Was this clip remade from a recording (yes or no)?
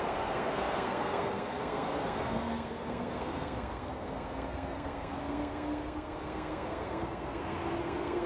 yes